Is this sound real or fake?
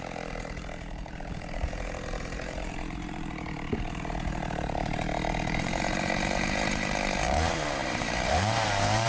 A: fake